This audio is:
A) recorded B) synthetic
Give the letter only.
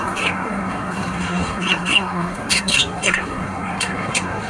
B